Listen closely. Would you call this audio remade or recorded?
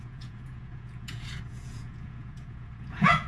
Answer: remade